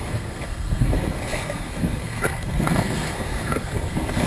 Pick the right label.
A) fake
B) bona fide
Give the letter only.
A